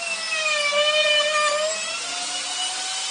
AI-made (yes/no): no